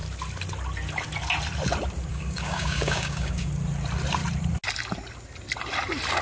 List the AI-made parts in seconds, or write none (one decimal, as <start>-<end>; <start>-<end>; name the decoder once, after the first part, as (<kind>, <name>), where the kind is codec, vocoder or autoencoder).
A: 2.1-3.5 (codec, DAC)